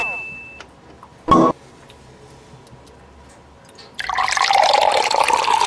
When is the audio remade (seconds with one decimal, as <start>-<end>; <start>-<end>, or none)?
none